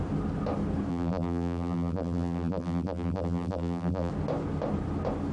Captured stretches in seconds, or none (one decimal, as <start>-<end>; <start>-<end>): 0.0-0.9; 4.1-5.3